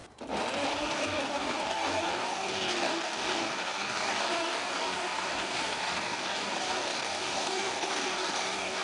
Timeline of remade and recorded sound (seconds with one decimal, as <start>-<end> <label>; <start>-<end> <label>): 0.0-0.7 recorded; 0.7-8.8 remade